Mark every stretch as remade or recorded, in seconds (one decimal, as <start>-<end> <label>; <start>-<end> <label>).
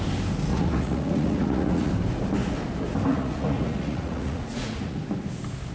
0.0-0.5 recorded; 0.5-1.9 remade; 1.9-3.1 recorded; 3.1-5.0 remade; 5.0-5.7 recorded